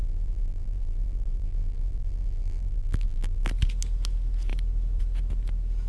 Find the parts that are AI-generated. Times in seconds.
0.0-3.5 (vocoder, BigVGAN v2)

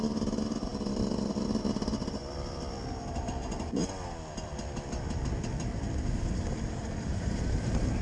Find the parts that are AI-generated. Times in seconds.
0.0-2.2 (vocoder, BigVGAN v2); 6.8-8.0

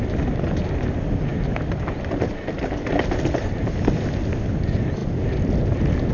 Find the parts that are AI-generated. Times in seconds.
none

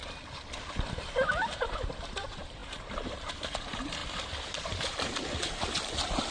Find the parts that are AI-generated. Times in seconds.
0.6-4.0 (vocoder, BigVGAN v2); 4.5-6.3

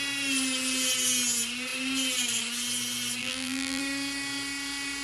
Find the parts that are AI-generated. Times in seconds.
3.2-3.8 (vocoder, BigVGAN v2)

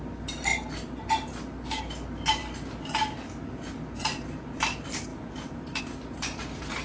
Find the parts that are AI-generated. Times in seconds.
none

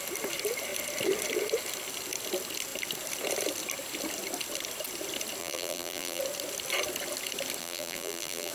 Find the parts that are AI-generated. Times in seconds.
5.4-6.2 (vocoder, BigVGAN v2); 7.6-8.5

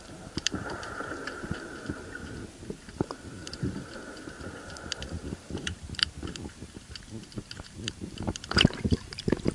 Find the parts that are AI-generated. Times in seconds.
0.0-2.2 (vocoder, BigVGAN v2); 2.9-9.5